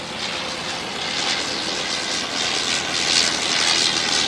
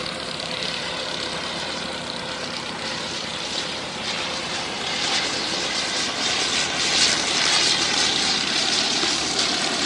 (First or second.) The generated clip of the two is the second